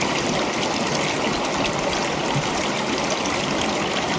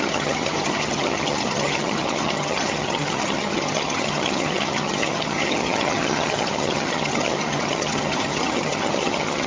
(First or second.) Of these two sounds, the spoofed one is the second